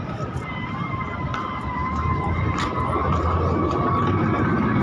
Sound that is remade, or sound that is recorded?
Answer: recorded